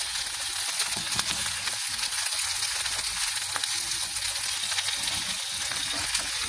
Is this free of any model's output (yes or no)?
no